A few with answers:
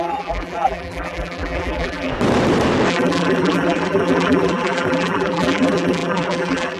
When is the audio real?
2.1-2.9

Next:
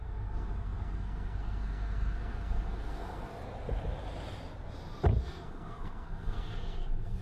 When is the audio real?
3.3-5.2

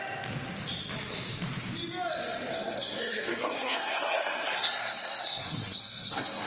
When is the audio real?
0.0-2.5

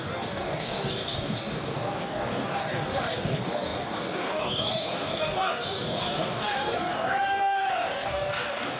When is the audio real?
none

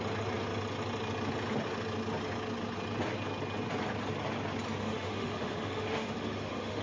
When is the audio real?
0.0-4.8

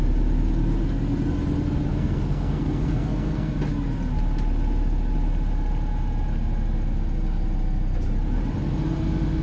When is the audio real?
0.0-1.9; 3.5-9.4

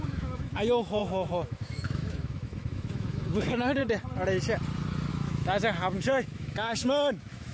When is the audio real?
3.8-5.1

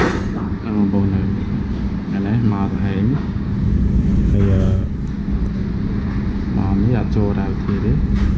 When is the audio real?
0.0-2.5; 3.5-8.4